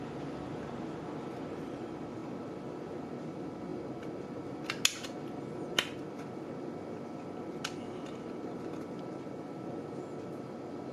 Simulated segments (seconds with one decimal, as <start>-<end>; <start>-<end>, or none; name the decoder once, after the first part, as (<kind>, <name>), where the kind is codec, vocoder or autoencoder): none